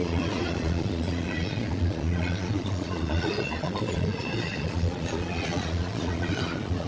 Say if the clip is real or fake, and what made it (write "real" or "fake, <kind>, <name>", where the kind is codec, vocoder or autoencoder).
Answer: fake, vocoder, Vocos